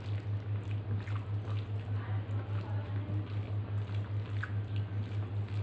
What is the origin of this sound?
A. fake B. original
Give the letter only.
B